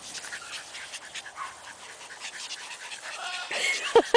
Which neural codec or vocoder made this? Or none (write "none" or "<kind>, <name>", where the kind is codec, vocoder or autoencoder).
none